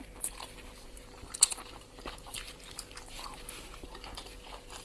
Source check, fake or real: real